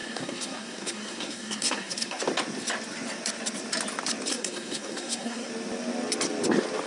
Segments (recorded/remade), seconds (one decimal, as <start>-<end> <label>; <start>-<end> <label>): 0.0-2.2 remade; 2.2-4.3 recorded; 4.3-5.5 remade; 5.5-6.9 recorded